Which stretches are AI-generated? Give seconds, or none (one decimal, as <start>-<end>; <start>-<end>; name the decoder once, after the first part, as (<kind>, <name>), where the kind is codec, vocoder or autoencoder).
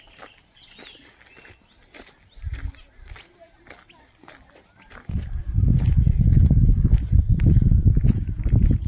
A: none